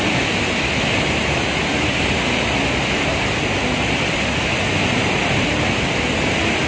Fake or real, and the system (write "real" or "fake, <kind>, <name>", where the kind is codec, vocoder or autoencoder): real